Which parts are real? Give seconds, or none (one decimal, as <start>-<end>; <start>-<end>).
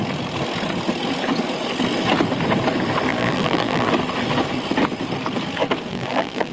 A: 0.0-3.1; 3.9-5.9